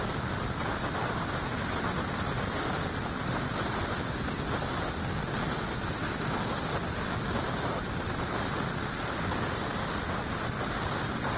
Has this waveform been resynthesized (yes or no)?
no